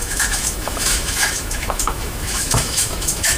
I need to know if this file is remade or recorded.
remade